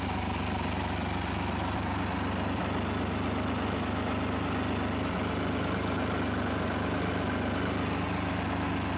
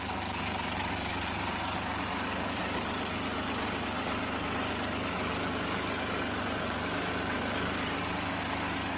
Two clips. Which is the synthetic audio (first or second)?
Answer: second